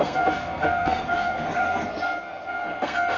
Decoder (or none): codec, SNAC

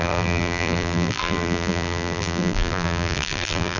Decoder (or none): vocoder, BigVGAN v2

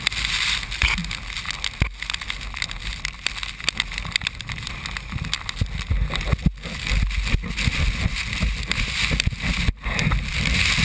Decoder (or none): none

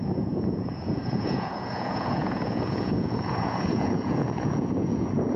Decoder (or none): vocoder, Vocos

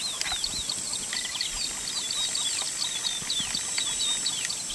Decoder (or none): none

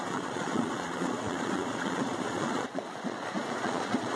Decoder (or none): vocoder, Vocos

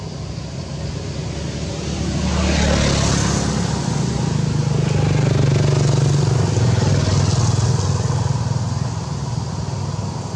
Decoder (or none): none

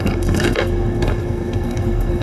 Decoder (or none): codec, SNAC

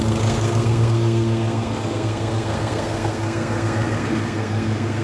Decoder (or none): codec, SNAC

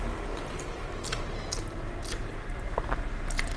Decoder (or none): none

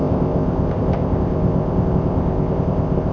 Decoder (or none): codec, ZipCodec